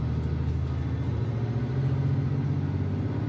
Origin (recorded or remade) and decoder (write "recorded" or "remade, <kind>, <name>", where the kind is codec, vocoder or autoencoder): recorded